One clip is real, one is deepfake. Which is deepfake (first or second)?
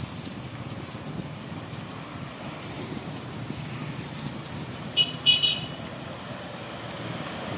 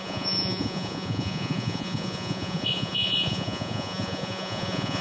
second